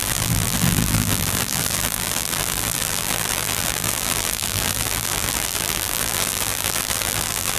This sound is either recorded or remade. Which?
remade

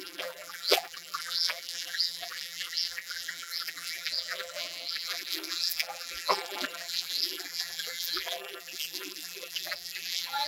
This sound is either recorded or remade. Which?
remade